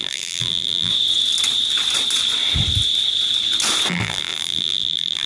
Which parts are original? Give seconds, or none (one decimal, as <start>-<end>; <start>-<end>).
0.9-3.9